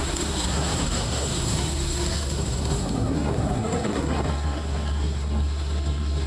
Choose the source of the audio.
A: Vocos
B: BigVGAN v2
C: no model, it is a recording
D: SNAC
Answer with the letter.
D